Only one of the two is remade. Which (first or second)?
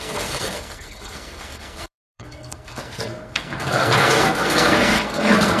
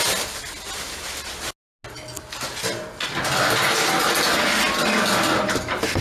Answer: first